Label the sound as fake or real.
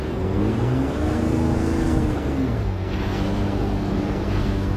fake